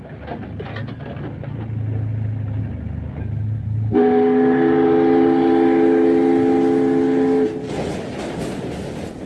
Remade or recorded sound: recorded